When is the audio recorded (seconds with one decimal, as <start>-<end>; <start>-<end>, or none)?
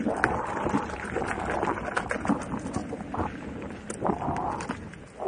0.0-5.3